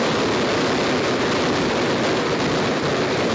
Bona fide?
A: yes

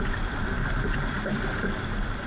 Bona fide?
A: no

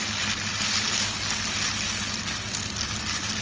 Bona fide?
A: yes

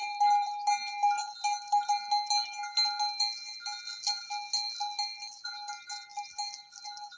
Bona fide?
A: yes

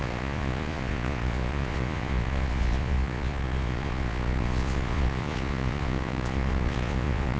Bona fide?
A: no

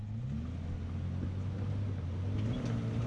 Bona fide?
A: yes